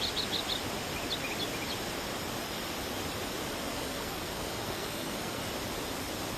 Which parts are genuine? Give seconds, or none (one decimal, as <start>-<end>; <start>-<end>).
0.0-3.7; 5.4-6.4